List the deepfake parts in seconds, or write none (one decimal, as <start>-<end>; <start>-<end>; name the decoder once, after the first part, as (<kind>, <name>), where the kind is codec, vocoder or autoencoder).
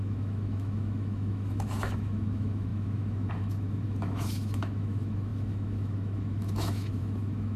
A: 0.0-7.6 (autoencoder, DAC-VAE)